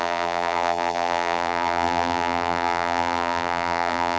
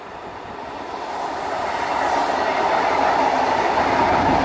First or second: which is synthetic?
first